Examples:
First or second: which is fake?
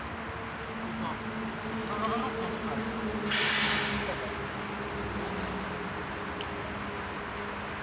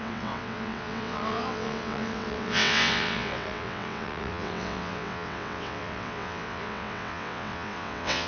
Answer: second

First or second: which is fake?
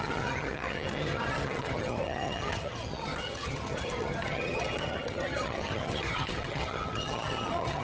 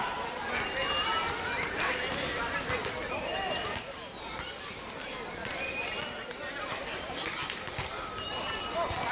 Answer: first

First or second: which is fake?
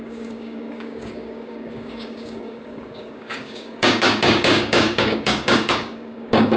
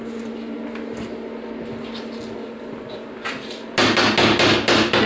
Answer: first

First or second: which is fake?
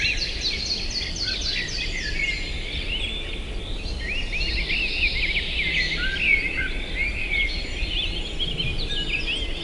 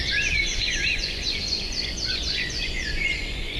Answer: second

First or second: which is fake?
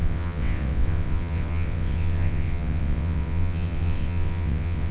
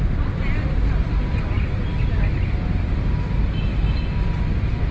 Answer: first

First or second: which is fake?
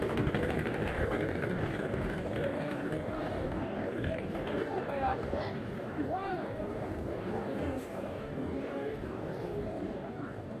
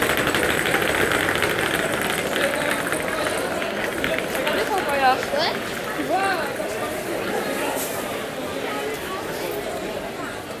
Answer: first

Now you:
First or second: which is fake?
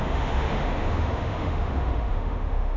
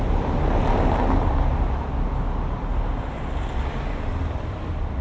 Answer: first